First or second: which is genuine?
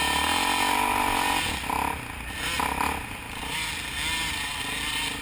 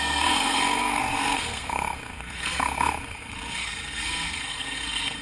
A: first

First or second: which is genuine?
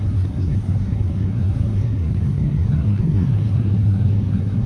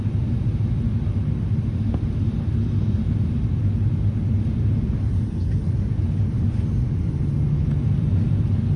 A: second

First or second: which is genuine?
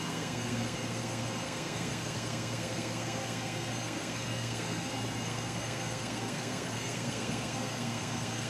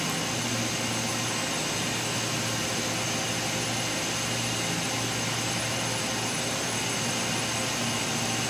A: second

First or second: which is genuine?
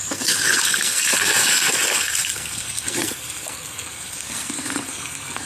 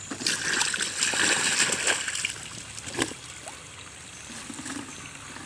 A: second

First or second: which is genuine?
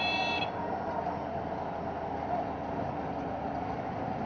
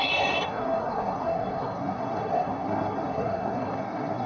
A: first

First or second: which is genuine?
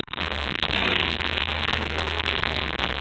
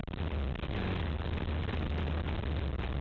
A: second